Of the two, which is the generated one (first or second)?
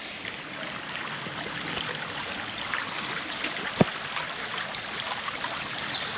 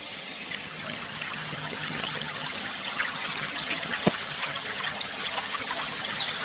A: second